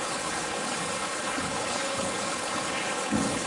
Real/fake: fake